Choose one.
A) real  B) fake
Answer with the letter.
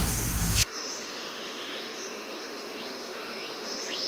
B